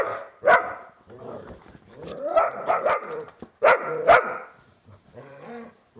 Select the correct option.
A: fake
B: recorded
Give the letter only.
A